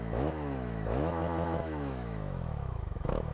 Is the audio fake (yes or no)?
yes